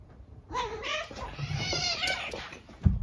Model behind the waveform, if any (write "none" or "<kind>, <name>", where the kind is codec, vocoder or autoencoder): vocoder, BigVGAN v2